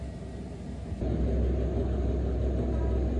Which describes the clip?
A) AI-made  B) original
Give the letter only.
B